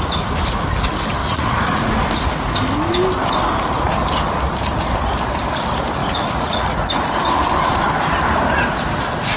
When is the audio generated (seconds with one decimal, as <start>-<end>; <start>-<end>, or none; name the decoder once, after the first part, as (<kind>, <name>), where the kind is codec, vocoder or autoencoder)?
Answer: 1.2-1.9 (vocoder, Vocos); 6.0-7.2